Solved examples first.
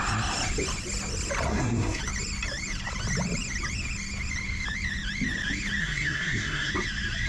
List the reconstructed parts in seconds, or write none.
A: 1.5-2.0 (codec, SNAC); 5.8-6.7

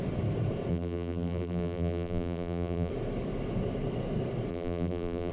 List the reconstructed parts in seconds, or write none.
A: 0.7-2.9 (vocoder, BigVGAN v2); 4.5-5.3

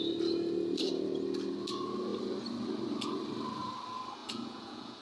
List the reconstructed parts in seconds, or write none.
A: 4.2-5.0 (vocoder, Vocos)

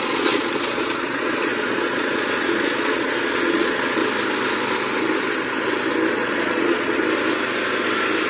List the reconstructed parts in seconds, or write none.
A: 0.0-4.0 (vocoder, Vocos); 6.1-7.0

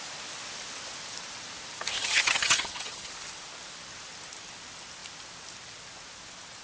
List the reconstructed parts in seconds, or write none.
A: 2.0-3.1 (vocoder, HiFi-GAN)

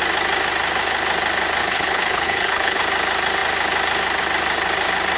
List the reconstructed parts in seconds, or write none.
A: 1.6-2.8 (codec, HILCodec)

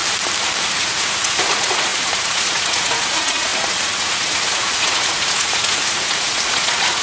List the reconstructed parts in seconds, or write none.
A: 0.6-7.0 (vocoder, Vocos)

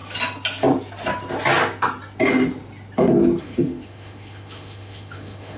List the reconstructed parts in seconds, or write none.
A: 3.4-5.6 (autoencoder, DAC-VAE)